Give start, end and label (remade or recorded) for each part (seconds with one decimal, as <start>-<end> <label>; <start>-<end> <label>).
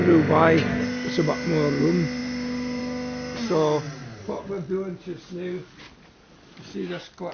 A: 0.0-2.2 recorded; 2.2-2.8 remade; 2.8-4.0 recorded; 4.0-4.5 remade; 4.5-7.3 recorded